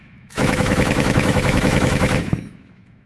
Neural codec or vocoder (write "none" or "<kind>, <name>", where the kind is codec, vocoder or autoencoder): autoencoder, DAC-VAE